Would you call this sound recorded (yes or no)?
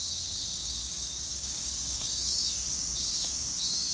no